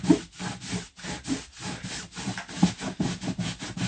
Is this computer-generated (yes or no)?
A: no